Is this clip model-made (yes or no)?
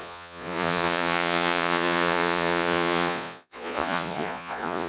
yes